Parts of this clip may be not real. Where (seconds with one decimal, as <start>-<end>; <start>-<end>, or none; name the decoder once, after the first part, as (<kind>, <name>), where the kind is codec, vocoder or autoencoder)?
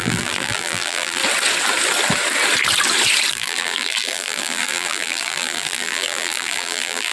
0.0-1.2 (vocoder, BigVGAN v2); 3.3-7.1